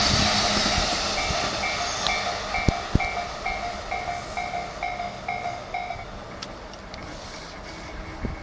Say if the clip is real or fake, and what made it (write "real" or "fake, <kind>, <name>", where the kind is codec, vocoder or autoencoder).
real